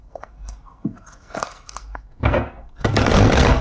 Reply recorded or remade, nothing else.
remade